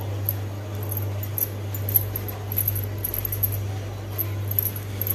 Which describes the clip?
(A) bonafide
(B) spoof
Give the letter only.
A